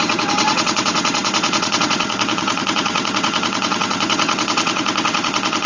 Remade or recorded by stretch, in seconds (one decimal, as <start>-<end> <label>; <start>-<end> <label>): 0.0-5.7 remade